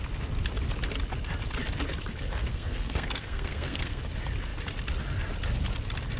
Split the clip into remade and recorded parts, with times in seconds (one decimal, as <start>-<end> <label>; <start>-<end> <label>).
0.0-2.5 recorded; 2.5-4.0 remade; 4.0-6.2 recorded